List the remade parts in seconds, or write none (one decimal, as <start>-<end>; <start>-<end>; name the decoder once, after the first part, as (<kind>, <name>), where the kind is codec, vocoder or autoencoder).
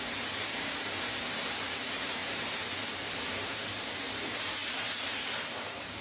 0.0-6.0 (vocoder, BigVGAN v2)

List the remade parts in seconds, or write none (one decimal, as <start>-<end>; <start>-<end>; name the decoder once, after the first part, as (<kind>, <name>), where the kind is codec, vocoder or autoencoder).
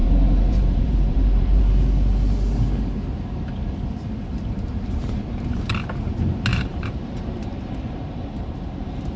0.0-1.6 (vocoder, BigVGAN v2); 4.3-5.7; 6.5-9.2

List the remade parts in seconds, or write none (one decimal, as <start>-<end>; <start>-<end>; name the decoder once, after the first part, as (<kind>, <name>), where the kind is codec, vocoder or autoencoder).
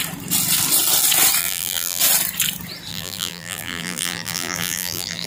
1.4-2.0 (vocoder, BigVGAN v2); 2.9-5.3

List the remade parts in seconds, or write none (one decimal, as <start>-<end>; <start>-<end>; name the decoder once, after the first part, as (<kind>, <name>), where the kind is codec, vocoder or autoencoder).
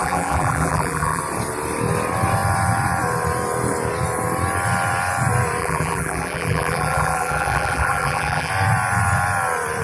0.0-1.2 (vocoder, BigVGAN v2); 5.6-8.5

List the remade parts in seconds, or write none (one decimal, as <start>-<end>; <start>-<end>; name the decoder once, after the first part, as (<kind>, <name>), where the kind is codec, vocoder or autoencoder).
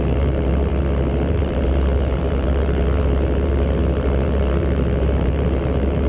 0.0-0.7 (vocoder, BigVGAN v2); 1.3-6.1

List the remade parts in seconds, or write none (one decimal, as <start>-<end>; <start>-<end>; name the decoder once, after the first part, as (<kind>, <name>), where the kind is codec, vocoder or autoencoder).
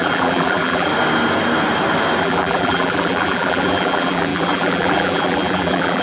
0.0-0.9 (vocoder, BigVGAN v2); 2.2-6.0